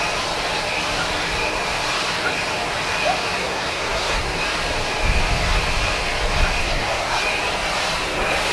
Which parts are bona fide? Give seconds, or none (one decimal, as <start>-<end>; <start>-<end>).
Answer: 0.0-3.4; 4.2-6.6; 7.2-8.5